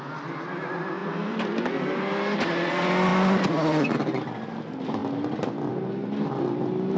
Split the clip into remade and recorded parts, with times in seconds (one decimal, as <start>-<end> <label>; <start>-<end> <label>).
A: 0.0-7.0 recorded